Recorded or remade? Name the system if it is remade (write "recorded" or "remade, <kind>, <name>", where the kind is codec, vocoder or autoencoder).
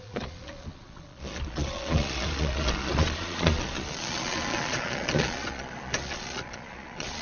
remade, vocoder, Vocos